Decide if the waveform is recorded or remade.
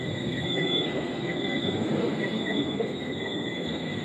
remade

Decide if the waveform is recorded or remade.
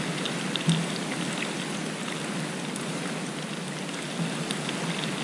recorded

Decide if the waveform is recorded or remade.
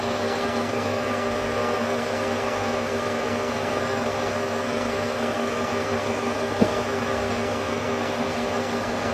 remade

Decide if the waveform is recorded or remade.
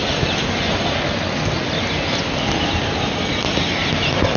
recorded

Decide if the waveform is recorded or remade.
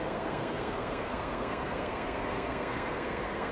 remade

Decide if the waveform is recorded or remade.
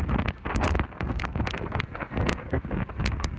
remade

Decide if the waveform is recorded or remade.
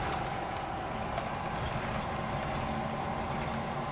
recorded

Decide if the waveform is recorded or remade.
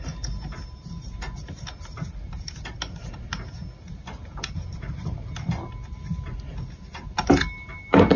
recorded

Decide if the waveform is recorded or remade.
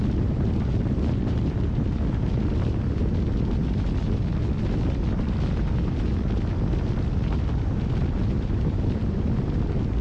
recorded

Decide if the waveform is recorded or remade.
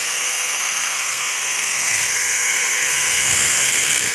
remade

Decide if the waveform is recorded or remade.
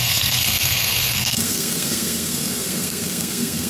remade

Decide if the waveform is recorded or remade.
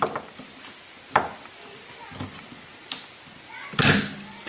recorded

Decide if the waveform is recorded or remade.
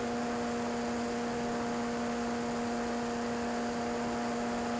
recorded